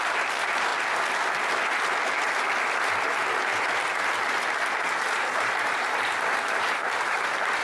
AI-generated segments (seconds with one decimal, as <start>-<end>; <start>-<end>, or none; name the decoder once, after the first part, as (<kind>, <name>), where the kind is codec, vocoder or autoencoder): 0.0-0.7 (vocoder, BigVGAN v2); 4.8-7.6